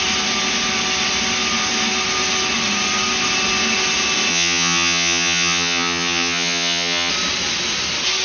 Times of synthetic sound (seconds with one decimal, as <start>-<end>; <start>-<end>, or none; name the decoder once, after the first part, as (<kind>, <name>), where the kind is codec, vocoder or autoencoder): 4.3-7.1 (vocoder, HiFi-GAN)